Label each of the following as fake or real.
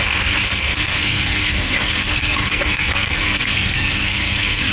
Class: fake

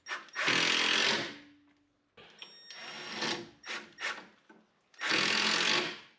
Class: real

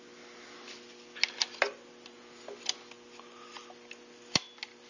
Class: real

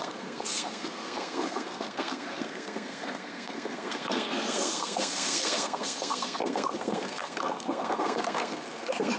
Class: fake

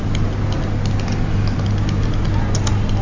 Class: real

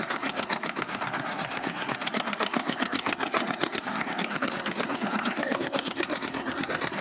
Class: fake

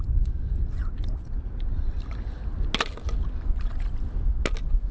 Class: real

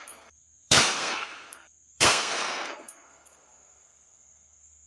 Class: fake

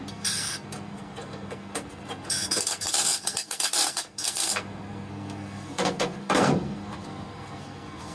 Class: fake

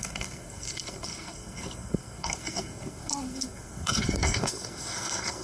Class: fake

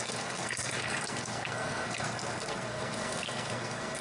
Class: fake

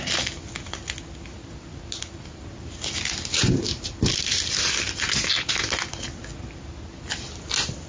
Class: real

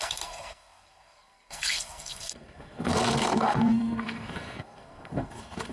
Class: fake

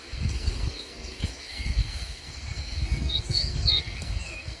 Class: fake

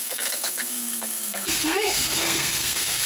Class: fake